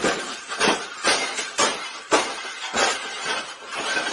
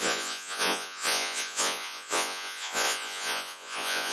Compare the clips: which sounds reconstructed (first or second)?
second